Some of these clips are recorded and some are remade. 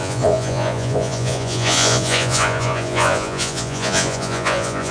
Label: remade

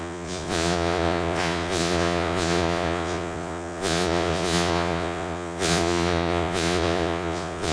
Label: remade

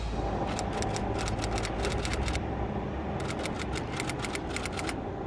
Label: recorded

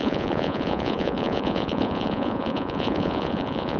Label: remade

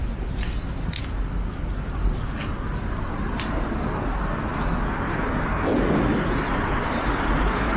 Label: recorded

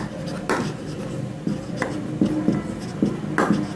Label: recorded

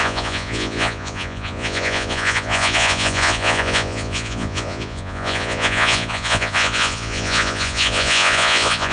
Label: remade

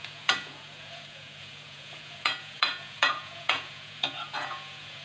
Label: remade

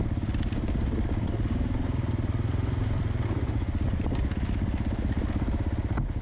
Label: recorded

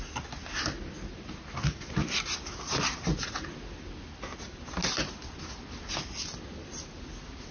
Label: recorded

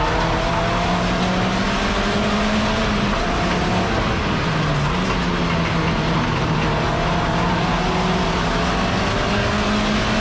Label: recorded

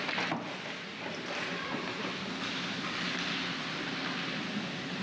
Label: recorded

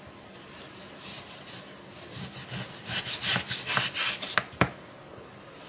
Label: recorded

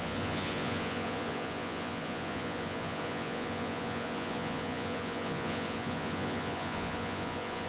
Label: remade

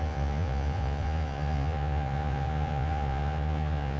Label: remade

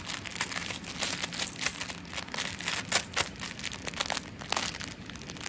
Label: recorded